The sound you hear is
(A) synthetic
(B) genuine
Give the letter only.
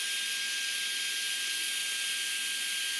B